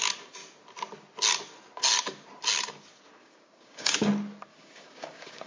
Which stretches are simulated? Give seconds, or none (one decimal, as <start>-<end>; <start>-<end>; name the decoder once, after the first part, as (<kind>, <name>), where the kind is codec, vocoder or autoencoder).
3.2-4.1 (codec, DAC); 4.5-5.5